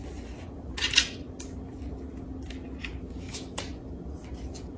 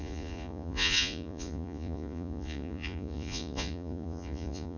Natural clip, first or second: first